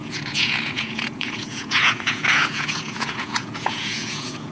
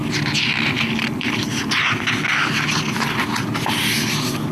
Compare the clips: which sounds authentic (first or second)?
second